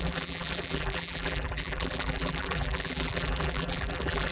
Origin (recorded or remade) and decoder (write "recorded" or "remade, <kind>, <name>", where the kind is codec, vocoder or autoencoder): remade, vocoder, BigVGAN v2